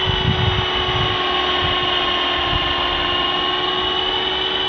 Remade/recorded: recorded